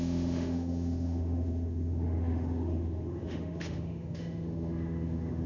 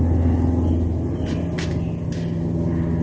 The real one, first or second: second